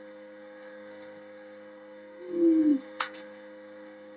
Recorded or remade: remade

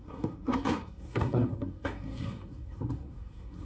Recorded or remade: remade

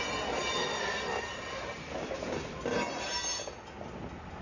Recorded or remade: recorded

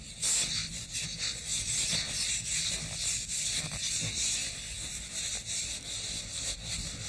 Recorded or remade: recorded